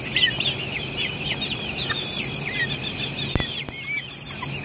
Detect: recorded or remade recorded